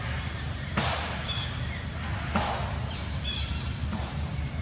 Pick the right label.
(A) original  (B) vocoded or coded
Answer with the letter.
B